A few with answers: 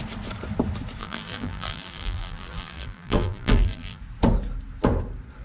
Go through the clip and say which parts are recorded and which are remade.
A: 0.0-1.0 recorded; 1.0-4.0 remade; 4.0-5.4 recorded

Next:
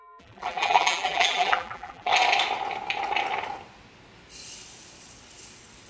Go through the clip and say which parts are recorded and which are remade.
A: 0.0-2.1 remade; 2.1-5.9 recorded

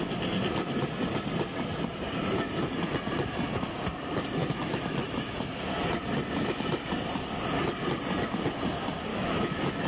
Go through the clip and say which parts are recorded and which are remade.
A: 0.0-4.4 recorded; 4.4-5.3 remade; 5.3-9.1 recorded; 9.1-9.9 remade

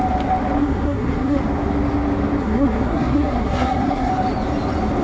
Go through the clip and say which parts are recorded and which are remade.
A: 0.0-0.6 recorded; 0.6-1.4 remade; 1.4-2.4 recorded; 2.4-4.1 remade; 4.1-5.0 recorded

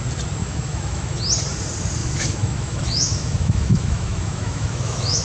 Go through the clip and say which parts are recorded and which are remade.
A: 0.0-0.4 recorded; 0.4-1.2 remade; 1.2-2.0 recorded; 2.0-5.2 remade

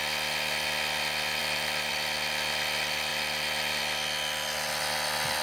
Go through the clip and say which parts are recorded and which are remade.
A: 0.0-1.4 recorded; 1.4-1.9 remade; 1.9-3.1 recorded; 3.1-3.8 remade; 3.8-5.4 recorded

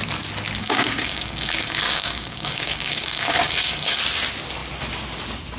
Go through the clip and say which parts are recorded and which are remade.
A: 0.0-0.6 recorded; 0.6-4.0 remade; 4.0-5.6 recorded

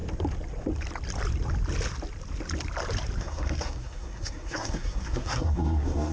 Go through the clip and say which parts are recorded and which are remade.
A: 0.0-3.2 recorded; 3.2-6.1 remade